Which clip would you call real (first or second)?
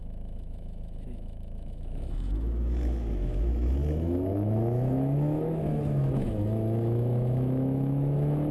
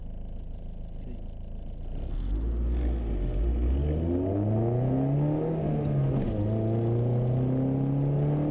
second